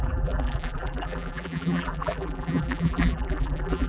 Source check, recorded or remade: remade